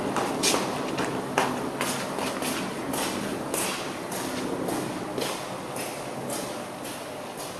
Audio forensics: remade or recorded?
recorded